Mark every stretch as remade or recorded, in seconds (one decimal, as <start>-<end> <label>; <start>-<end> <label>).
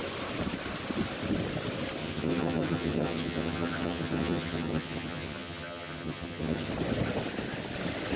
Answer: 0.0-2.0 recorded; 2.0-6.7 remade; 6.7-8.2 recorded